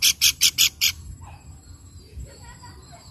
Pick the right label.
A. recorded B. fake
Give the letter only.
B